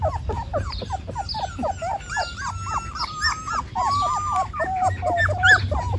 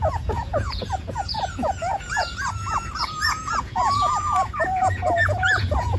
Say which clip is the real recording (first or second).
first